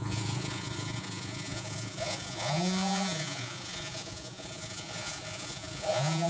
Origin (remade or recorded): remade